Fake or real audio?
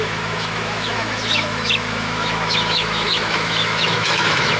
fake